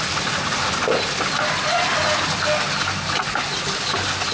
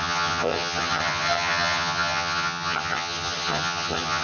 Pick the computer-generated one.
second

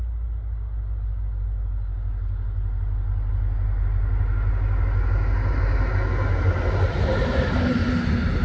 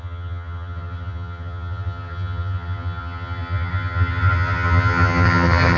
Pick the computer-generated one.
second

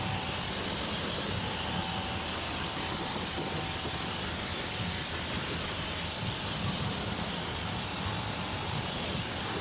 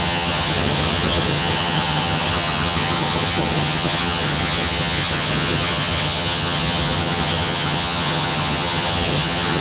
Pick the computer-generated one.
second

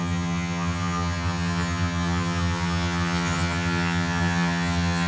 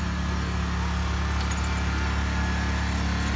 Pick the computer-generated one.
first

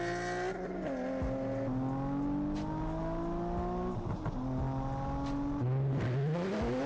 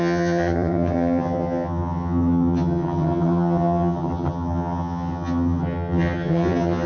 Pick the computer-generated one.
second